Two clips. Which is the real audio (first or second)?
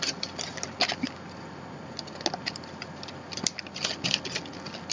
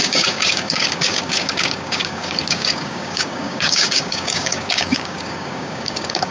first